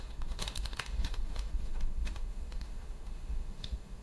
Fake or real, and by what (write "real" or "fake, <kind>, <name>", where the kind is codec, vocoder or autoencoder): fake, autoencoder, DAC-VAE